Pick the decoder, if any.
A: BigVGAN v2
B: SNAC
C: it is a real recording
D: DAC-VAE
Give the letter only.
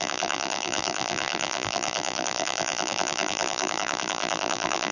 A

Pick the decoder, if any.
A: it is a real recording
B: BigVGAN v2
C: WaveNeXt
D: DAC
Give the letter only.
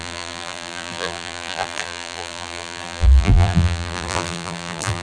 B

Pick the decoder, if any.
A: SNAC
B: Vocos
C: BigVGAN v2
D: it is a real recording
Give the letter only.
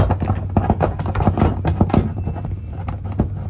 D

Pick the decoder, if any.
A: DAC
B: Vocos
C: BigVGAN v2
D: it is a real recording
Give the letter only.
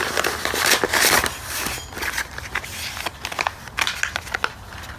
D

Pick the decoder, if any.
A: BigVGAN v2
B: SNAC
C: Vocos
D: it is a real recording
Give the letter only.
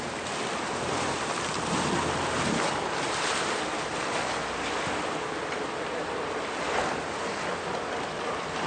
A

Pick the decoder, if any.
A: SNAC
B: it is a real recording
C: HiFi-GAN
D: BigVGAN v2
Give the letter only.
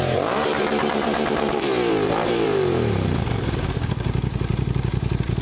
D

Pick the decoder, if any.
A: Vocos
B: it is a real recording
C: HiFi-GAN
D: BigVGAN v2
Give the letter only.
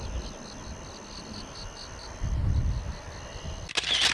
B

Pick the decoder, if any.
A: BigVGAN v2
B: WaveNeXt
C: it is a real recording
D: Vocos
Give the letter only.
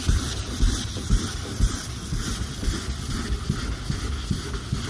C